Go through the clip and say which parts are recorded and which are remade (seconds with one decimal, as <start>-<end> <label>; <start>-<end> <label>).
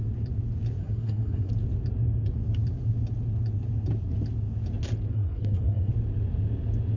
0.0-0.8 recorded; 0.8-1.5 remade; 1.5-5.1 recorded; 5.1-5.9 remade; 5.9-7.0 recorded